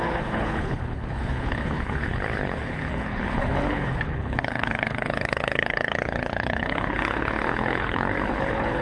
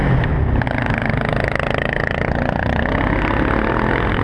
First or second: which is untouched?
second